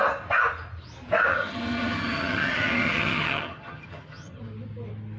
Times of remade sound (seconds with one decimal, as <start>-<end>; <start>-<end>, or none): 1.3-4.4